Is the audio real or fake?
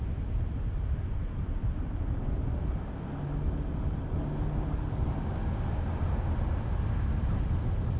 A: real